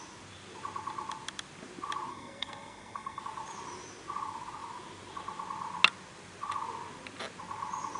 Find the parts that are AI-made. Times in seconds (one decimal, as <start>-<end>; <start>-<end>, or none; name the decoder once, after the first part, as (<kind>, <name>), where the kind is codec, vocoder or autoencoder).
2.1-3.2 (codec, SNAC)